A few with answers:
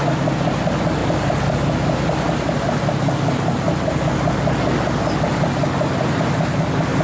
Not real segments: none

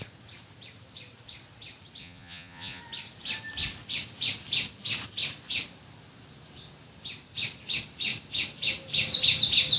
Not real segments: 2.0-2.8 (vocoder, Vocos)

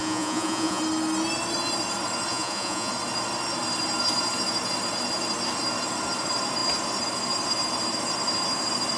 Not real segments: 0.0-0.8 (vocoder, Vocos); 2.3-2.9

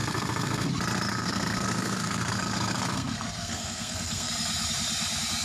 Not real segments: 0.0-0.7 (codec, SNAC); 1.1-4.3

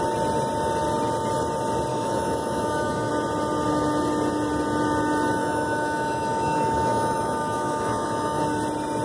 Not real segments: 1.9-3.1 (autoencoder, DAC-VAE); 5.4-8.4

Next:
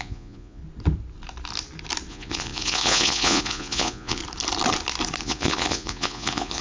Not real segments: 0.0-0.6 (vocoder, Vocos); 2.1-4.2; 5.2-6.6

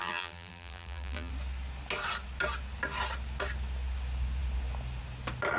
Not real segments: 0.0-1.3 (vocoder, BigVGAN v2)

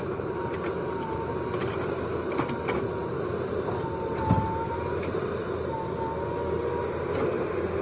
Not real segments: none